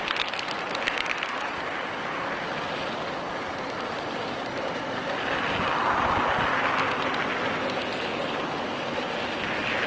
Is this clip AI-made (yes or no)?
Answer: no